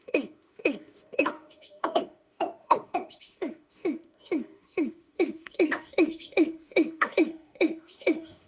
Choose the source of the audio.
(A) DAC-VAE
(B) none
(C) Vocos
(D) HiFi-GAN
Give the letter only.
A